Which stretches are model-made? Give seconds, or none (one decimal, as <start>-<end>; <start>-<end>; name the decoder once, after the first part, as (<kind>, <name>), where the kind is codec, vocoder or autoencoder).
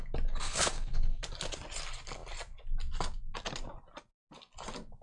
0.4-1.2 (codec, SNAC)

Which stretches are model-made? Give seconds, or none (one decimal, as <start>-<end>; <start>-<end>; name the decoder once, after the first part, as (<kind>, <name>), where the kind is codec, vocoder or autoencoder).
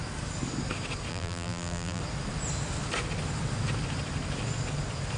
1.1-2.0 (vocoder, BigVGAN v2)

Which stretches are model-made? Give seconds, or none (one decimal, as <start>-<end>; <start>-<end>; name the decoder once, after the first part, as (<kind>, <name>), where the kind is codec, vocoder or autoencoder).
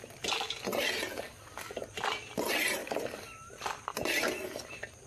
0.7-1.2 (vocoder, BigVGAN v2); 2.8-4.3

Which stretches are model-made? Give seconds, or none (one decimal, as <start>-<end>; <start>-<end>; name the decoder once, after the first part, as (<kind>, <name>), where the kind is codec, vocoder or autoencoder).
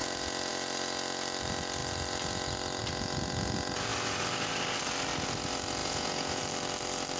5.8-6.4 (vocoder, Vocos)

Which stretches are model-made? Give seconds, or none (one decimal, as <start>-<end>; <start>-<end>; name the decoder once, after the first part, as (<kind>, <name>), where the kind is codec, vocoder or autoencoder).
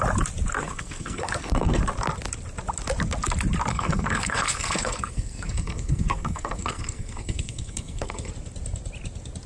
0.6-1.8 (codec, SNAC); 3.7-8.3